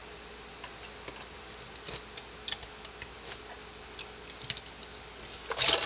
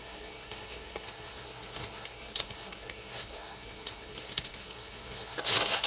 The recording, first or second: first